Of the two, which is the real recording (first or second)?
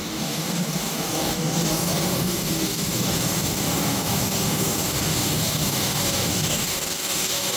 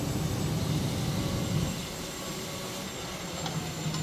second